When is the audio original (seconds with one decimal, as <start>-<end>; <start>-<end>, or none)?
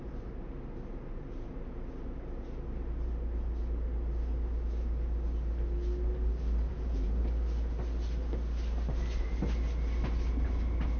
0.0-6.7; 7.2-11.0